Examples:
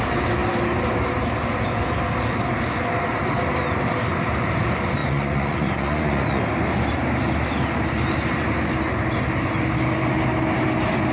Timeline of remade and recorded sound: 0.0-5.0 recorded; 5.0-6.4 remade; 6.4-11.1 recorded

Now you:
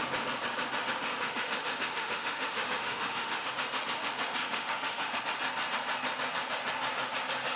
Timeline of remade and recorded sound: 0.0-1.1 recorded; 1.1-3.5 remade; 3.5-4.4 recorded; 4.4-5.2 remade; 5.2-7.6 recorded

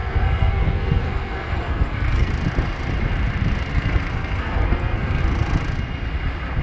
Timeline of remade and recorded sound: 0.0-2.3 remade; 2.3-3.7 recorded; 3.7-5.2 remade; 5.2-6.6 recorded

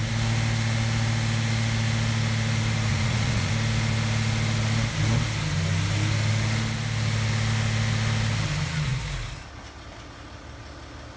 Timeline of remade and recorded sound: 0.0-2.9 recorded; 2.9-3.5 remade; 3.5-11.2 recorded

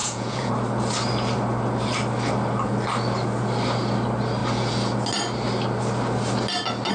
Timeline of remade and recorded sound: 0.0-0.5 remade; 0.5-6.9 recorded

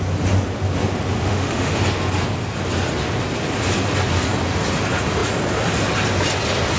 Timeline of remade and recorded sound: 0.0-1.2 recorded; 1.2-1.8 remade; 1.8-6.8 recorded

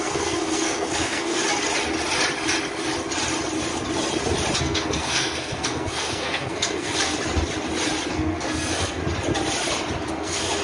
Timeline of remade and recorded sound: 0.0-1.4 remade; 1.4-4.6 recorded; 4.6-7.1 remade; 7.1-8.1 recorded; 8.1-9.0 remade; 9.0-10.1 recorded; 10.1-10.6 remade

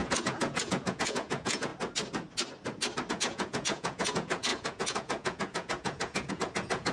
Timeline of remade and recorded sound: 0.0-1.7 remade; 1.7-3.1 recorded; 3.1-6.9 remade